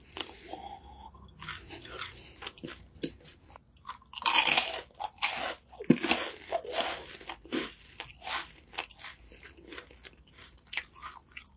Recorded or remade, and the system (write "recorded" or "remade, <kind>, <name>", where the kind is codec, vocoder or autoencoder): recorded